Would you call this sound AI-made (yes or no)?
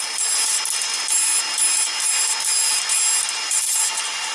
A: no